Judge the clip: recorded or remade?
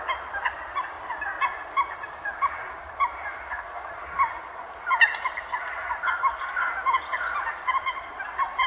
recorded